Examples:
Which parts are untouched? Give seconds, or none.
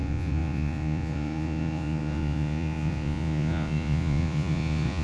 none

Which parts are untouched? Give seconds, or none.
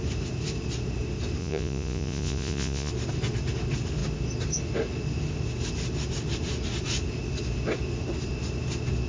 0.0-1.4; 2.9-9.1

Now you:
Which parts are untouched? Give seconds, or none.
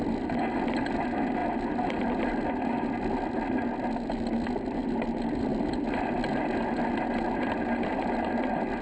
0.0-8.8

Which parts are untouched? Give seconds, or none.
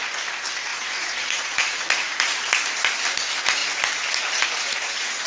0.0-0.7; 2.2-5.3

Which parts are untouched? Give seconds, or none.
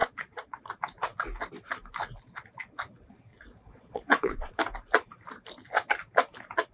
0.7-3.3; 4.6-6.7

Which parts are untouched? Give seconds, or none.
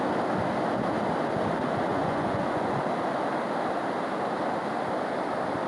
0.0-1.9; 2.8-5.7